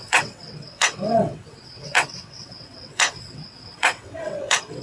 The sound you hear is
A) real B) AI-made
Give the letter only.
B